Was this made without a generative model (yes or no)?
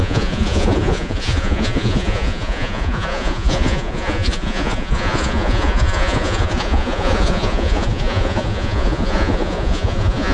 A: no